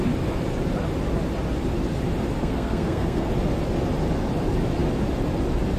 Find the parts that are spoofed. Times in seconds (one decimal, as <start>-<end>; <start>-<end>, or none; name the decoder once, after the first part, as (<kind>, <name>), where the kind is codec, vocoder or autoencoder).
2.4-3.3 (codec, SNAC)